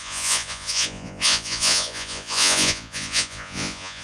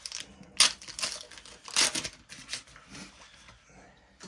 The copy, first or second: first